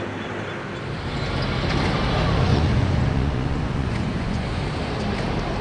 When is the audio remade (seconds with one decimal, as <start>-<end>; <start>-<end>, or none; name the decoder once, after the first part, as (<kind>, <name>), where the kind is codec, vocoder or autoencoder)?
2.5-4.6 (vocoder, Vocos)